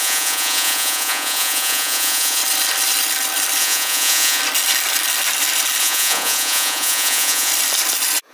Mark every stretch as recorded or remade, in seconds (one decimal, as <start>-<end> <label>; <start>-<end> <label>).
0.0-2.4 remade; 2.4-3.6 recorded; 3.6-4.4 remade; 4.4-5.8 recorded; 5.8-7.5 remade; 7.5-8.3 recorded